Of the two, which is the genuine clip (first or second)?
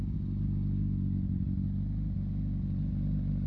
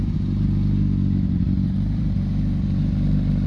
first